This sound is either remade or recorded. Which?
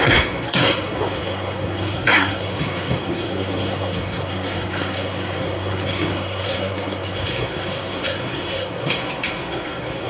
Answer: remade